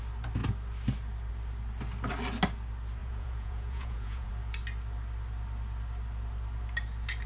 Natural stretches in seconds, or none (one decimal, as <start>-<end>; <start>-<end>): 0.0-3.0; 4.3-7.3